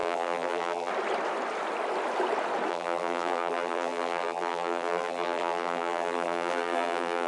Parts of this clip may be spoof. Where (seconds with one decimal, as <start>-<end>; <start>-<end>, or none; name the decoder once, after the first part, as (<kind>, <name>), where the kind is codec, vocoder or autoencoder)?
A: 0.0-0.9 (vocoder, BigVGAN v2); 2.7-7.3